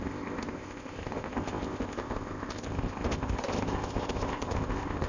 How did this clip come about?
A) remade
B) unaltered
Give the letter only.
A